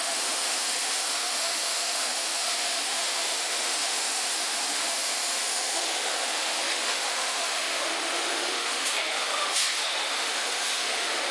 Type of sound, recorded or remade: remade